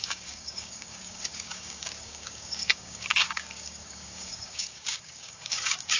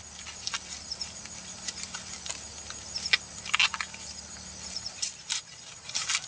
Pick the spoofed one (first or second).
first